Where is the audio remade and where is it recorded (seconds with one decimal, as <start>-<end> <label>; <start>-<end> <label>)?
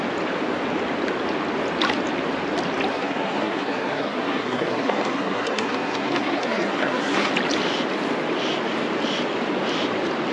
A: 0.0-2.9 recorded; 2.9-7.3 remade; 7.3-10.3 recorded